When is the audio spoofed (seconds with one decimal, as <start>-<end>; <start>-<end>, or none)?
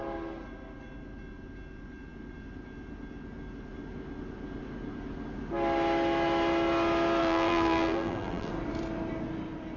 7.2-8.5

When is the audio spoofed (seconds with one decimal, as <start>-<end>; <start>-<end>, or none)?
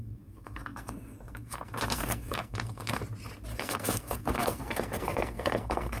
0.0-3.0; 3.6-6.0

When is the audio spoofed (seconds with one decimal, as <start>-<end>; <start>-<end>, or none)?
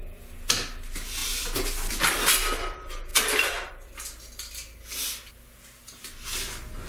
1.2-2.0; 3.1-3.7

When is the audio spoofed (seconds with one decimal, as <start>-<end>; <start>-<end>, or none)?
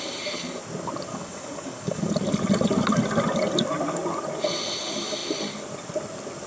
1.1-2.1